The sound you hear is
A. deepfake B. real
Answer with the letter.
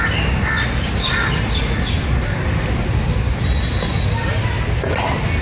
B